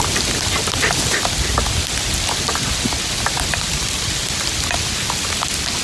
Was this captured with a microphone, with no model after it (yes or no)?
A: yes